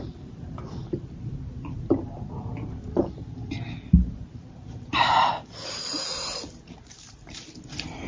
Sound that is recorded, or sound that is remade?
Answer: remade